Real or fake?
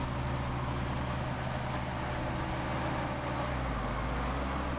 real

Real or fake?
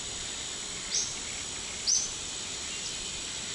real